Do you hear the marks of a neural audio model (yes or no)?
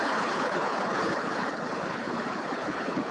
yes